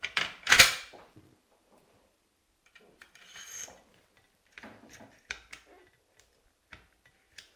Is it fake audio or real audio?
fake